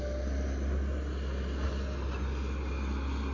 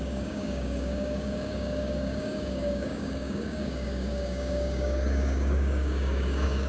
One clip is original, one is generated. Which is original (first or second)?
first